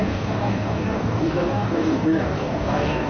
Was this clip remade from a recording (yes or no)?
yes